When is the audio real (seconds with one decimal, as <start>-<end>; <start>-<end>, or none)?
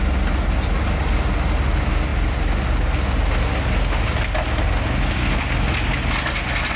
0.0-6.8